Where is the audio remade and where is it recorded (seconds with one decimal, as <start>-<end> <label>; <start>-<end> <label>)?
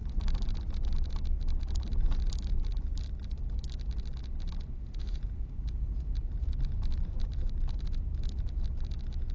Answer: 0.0-4.8 recorded; 4.8-6.2 remade; 6.2-9.3 recorded